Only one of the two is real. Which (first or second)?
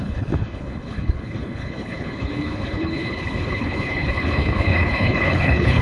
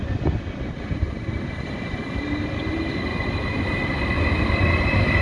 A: second